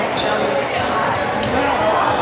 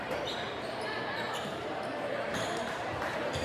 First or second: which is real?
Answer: first